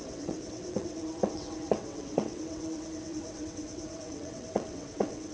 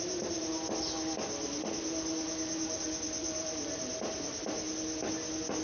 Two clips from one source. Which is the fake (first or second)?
first